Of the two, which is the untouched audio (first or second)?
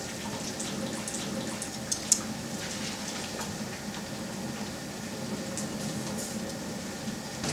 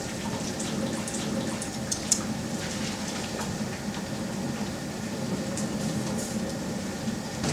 first